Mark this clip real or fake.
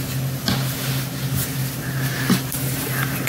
real